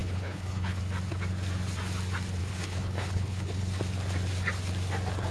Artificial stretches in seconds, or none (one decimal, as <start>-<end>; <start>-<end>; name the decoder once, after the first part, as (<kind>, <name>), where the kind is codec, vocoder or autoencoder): 0.0-0.8 (codec, HILCodec); 2.4-3.8